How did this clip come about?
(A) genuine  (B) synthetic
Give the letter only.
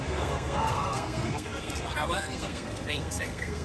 B